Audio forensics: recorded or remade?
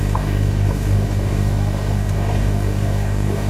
remade